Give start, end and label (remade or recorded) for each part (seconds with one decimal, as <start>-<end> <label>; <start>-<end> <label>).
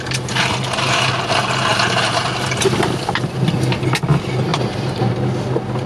0.0-1.7 recorded; 1.7-2.2 remade; 2.2-4.5 recorded; 4.5-5.2 remade; 5.2-5.9 recorded